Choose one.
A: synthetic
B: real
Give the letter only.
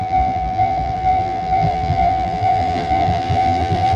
A